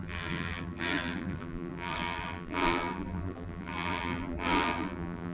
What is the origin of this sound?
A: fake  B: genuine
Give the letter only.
A